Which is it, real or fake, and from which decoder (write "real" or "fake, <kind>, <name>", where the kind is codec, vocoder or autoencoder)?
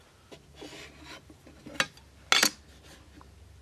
real